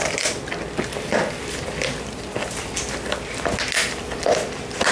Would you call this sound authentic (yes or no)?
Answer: yes